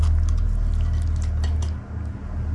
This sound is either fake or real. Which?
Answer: real